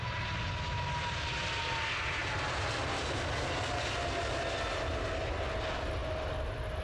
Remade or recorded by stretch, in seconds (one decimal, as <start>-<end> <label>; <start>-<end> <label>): 0.0-6.8 recorded